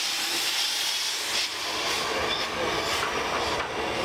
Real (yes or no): yes